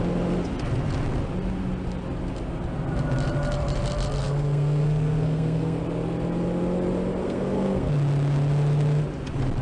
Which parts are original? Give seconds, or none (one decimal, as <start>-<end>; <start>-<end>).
0.0-4.2; 5.8-7.2; 7.9-9.6